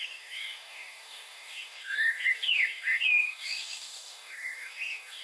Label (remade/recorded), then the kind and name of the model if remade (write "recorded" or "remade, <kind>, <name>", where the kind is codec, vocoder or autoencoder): remade, codec, DAC